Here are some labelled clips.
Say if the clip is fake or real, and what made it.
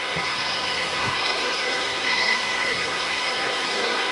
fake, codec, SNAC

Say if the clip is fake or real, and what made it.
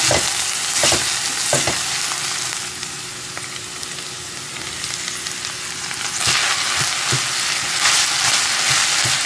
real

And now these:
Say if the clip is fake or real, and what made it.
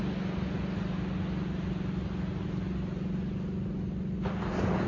real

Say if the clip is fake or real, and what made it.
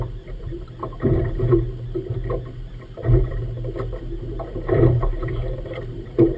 real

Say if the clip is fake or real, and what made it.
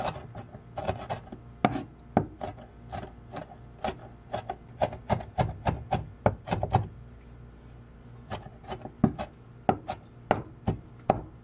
real